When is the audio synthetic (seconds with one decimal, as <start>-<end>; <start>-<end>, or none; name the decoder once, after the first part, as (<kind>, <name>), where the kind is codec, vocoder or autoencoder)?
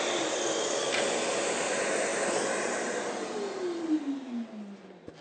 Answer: none